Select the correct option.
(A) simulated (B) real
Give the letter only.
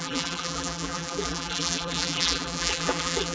A